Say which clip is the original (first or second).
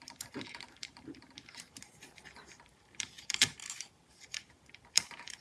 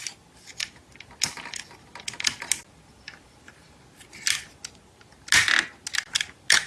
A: second